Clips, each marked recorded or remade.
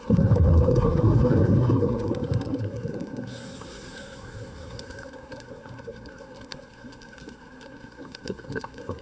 remade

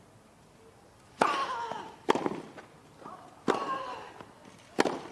recorded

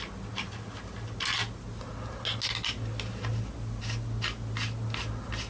recorded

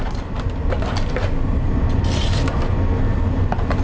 recorded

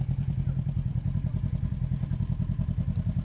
remade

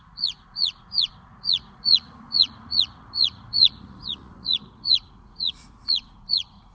remade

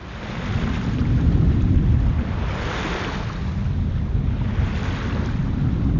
recorded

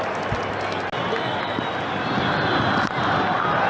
recorded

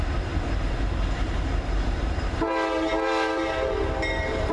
remade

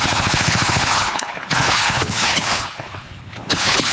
remade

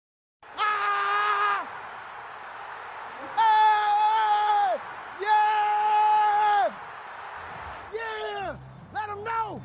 recorded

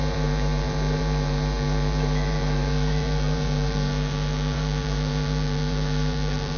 remade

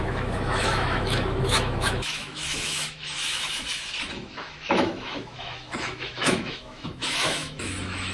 remade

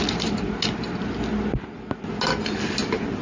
recorded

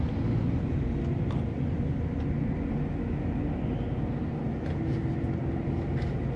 recorded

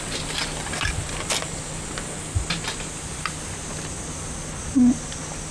recorded